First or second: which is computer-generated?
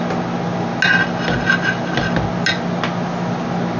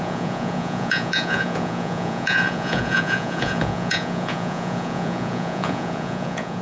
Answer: second